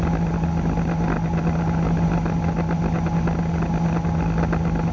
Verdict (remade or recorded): recorded